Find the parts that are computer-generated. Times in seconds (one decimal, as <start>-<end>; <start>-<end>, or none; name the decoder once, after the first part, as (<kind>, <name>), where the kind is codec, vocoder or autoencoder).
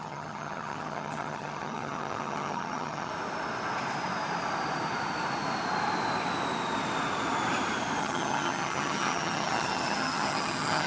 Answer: 0.0-3.1 (vocoder, HiFi-GAN); 8.0-10.9